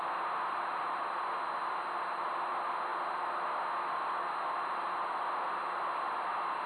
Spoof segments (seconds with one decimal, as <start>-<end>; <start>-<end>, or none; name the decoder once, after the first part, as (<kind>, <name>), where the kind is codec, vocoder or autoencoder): none